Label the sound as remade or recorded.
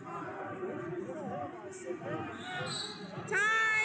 recorded